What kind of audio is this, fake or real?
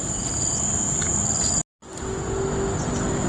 real